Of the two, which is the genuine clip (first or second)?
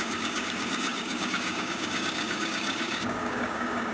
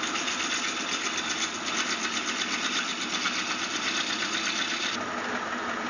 second